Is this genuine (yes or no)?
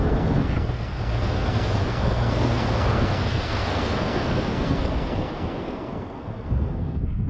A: no